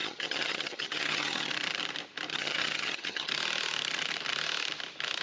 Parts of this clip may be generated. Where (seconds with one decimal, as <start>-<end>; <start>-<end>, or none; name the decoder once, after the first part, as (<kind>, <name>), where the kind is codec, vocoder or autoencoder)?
0.0-1.5 (vocoder, HiFi-GAN); 2.3-3.3